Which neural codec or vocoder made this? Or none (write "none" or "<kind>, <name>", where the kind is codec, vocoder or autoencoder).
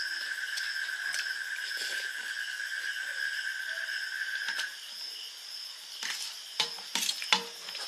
none